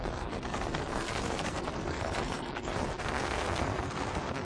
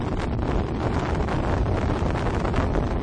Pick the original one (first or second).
second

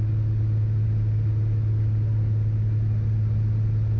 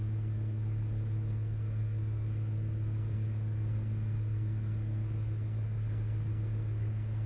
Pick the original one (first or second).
first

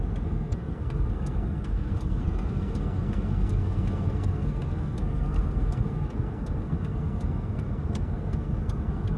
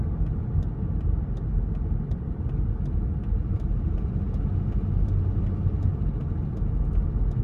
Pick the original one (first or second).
second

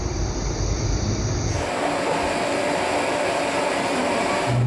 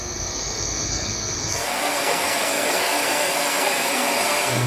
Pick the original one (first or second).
first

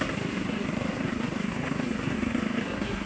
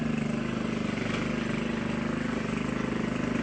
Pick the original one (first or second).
second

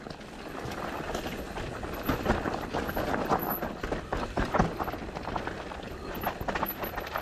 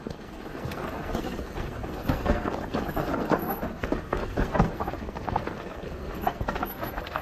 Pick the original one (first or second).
first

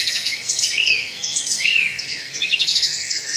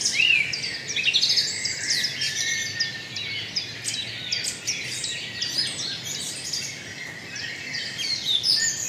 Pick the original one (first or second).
second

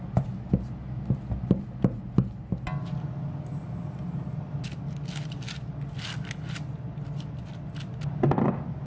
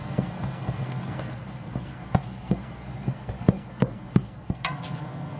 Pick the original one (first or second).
first